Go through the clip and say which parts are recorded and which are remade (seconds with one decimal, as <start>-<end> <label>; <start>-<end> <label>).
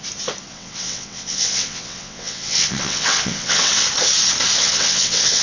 0.0-0.5 recorded; 0.5-3.7 remade; 3.7-4.6 recorded; 4.6-5.4 remade